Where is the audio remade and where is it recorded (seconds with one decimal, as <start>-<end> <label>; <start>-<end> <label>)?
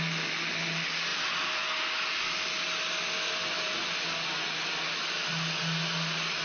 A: 0.0-6.4 recorded